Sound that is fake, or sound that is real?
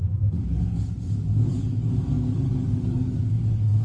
fake